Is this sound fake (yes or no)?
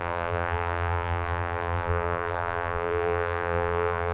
yes